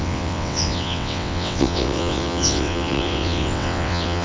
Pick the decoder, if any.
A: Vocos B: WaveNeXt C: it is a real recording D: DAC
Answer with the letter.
B